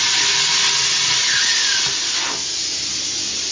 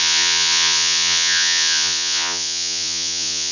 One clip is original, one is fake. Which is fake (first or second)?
second